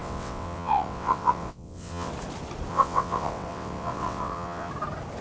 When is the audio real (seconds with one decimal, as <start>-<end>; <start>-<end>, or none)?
2.1-2.7; 4.7-5.2